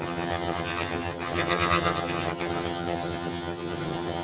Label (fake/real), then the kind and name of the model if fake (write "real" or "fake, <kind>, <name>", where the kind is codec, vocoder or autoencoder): fake, vocoder, HiFi-GAN